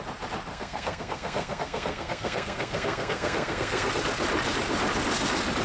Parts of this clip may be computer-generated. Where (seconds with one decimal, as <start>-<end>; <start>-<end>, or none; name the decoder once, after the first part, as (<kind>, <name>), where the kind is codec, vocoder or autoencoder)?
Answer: 0.5-3.9 (codec, SNAC)